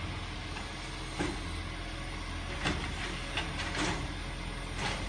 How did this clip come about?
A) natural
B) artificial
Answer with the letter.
A